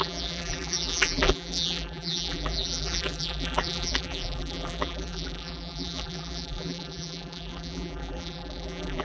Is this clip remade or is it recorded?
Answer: remade